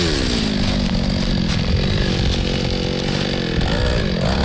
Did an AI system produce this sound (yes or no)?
no